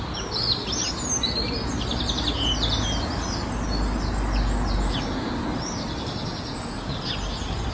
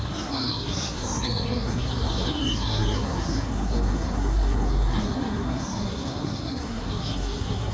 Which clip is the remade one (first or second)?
second